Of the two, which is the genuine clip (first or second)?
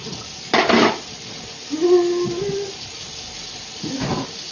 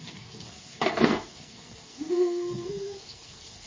first